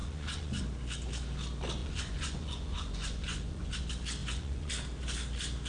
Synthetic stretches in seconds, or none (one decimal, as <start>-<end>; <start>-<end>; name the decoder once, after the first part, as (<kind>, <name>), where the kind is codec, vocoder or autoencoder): 0.0-0.6 (vocoder, Vocos); 1.8-3.8; 4.2-4.7